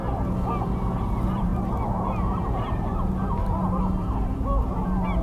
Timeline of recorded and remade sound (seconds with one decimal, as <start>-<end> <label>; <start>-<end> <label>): 0.0-1.1 recorded; 1.1-5.2 remade